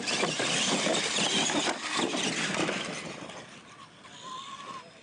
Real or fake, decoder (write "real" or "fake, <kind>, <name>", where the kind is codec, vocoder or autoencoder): real